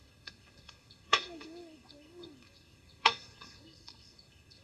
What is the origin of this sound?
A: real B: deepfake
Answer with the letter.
B